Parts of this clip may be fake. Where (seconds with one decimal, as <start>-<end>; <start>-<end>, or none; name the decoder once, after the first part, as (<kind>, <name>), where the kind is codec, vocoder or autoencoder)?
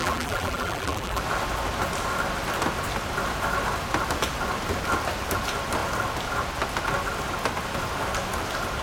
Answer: 0.0-1.2 (vocoder, BigVGAN v2)